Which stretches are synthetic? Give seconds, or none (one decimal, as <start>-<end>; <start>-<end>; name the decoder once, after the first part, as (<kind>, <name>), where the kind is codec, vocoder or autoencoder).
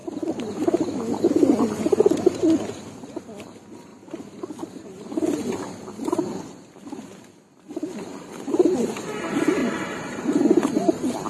none